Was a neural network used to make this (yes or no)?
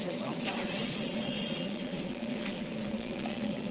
yes